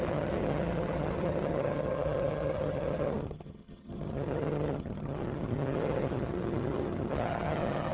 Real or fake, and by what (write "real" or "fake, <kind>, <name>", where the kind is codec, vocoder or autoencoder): fake, vocoder, HiFi-GAN